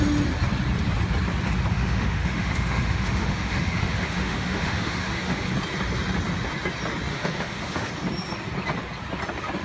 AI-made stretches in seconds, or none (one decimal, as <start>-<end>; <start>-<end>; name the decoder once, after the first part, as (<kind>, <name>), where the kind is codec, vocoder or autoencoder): 1.7-5.5 (autoencoder, DAC-VAE); 7.1-7.9

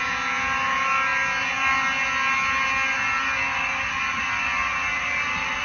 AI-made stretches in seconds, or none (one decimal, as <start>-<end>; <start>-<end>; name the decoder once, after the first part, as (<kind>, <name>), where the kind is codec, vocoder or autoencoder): none

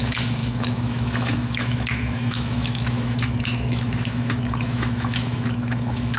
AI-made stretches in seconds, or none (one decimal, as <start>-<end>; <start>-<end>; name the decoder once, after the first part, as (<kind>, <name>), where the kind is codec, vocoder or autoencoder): 0.0-6.2 (autoencoder, DAC-VAE)

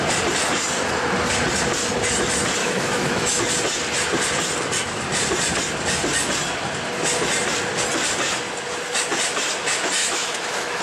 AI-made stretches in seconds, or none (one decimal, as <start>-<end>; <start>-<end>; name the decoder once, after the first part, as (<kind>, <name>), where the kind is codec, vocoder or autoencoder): 2.6-3.4 (autoencoder, DAC-VAE); 10.0-10.8